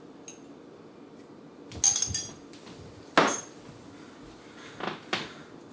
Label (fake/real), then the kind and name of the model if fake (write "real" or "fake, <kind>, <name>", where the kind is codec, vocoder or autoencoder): real